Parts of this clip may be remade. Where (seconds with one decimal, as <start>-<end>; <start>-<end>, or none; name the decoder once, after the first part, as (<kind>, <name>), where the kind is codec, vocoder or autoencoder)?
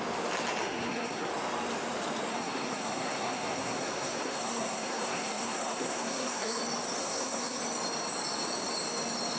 0.6-1.3 (codec, SNAC); 2.3-6.6; 7.0-7.6